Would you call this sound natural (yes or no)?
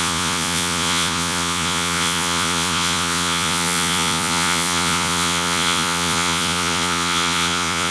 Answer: no